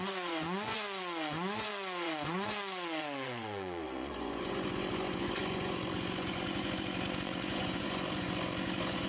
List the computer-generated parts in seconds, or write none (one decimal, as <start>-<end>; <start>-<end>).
0.0-9.1